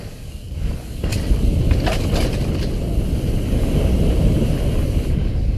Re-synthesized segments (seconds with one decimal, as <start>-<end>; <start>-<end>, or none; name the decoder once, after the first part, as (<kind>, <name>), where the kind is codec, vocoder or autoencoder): 0.0-1.1 (codec, DAC); 3.5-3.9; 5.1-5.6